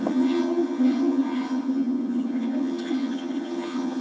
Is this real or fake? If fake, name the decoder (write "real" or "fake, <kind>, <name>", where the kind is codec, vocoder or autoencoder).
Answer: fake, vocoder, HiFi-GAN